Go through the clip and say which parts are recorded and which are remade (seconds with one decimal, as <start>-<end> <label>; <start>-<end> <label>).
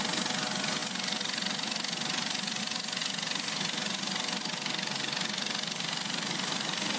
0.0-7.0 recorded